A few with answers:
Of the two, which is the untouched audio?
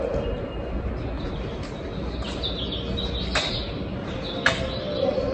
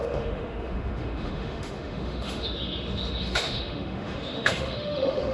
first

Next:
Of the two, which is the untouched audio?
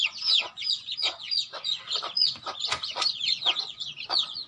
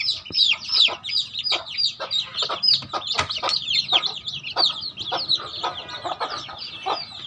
second